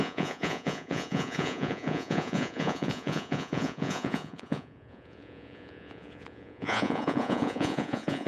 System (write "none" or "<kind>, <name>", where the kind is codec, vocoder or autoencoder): vocoder, Vocos